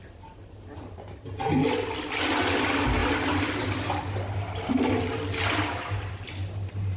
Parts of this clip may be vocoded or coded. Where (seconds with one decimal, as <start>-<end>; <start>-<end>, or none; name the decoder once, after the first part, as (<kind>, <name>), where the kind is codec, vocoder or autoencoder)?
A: none